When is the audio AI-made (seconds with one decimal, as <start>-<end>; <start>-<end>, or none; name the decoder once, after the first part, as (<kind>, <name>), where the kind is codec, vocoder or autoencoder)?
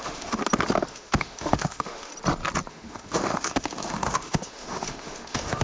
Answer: 0.0-0.4 (autoencoder, DAC-VAE); 0.9-2.1; 2.7-5.6